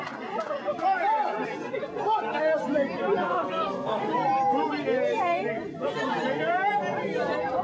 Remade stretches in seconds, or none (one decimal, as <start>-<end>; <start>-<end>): 3.2-4.1